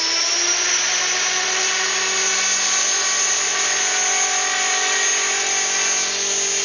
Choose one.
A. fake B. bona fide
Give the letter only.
B